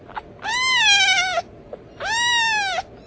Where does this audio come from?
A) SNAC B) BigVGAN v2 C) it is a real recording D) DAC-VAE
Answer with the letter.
C